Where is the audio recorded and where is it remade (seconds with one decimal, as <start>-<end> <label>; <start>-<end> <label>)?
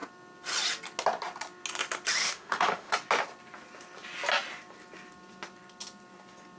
0.0-2.2 recorded; 2.2-2.9 remade; 2.9-6.6 recorded